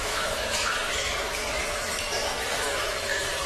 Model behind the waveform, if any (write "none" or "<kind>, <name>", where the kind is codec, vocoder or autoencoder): autoencoder, DAC-VAE